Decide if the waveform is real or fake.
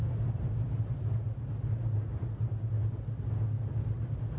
real